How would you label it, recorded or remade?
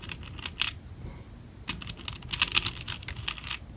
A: recorded